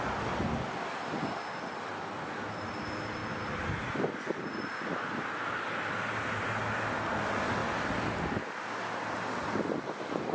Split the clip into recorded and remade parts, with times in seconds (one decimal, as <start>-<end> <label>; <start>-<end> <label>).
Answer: 0.0-10.3 recorded